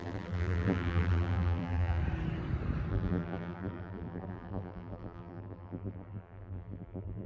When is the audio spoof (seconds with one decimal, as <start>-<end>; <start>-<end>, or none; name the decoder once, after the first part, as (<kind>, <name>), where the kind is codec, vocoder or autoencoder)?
0.0-2.0 (vocoder, BigVGAN v2); 2.9-7.3